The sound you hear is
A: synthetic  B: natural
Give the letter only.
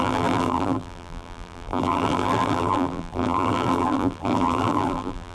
A